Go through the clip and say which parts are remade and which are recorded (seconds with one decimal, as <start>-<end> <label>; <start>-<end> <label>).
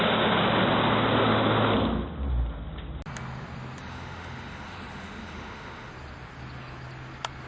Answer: 0.0-3.8 recorded; 3.8-5.9 remade; 5.9-7.5 recorded